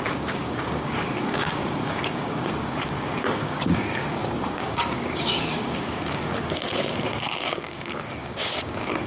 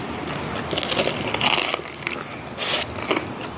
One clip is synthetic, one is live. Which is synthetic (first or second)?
first